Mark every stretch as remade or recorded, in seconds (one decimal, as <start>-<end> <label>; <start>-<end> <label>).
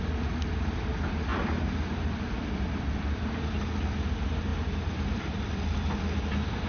0.0-1.3 recorded; 1.3-3.4 remade; 3.4-4.5 recorded; 4.5-6.0 remade; 6.0-6.7 recorded